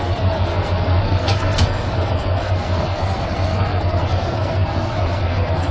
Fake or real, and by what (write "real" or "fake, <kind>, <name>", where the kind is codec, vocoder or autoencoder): fake, codec, SNAC